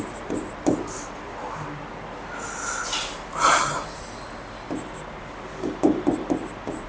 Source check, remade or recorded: recorded